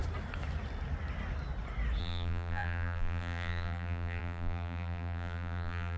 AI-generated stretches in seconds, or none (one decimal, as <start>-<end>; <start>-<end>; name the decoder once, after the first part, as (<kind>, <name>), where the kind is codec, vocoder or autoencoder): 2.0-6.0 (vocoder, BigVGAN v2)